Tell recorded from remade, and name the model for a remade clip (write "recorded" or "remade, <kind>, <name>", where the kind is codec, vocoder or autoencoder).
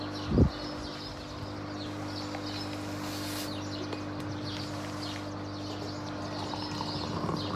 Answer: recorded